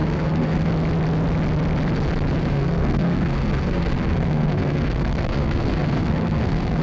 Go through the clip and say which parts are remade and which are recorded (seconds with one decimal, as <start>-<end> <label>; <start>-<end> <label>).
0.0-0.7 remade; 0.7-2.4 recorded; 2.4-6.8 remade

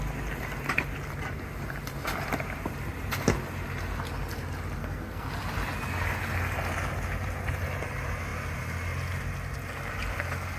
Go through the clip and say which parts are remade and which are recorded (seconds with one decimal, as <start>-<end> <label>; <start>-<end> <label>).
0.0-4.8 recorded; 4.8-5.3 remade; 5.3-10.6 recorded